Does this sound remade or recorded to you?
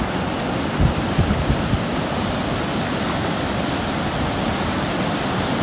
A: recorded